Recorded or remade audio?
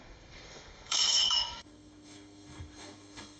remade